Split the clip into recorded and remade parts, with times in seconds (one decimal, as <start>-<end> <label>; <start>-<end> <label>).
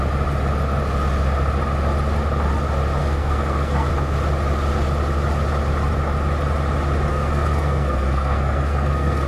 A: 0.0-3.0 recorded; 3.0-3.9 remade; 3.9-7.1 recorded; 7.1-9.3 remade